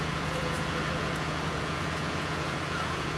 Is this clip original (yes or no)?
no